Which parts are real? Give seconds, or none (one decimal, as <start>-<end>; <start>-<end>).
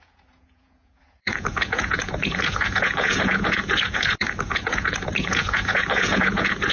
none